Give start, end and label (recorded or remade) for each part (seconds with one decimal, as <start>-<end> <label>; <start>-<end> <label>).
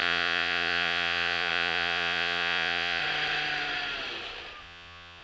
0.0-3.0 remade; 3.0-4.6 recorded; 4.6-5.2 remade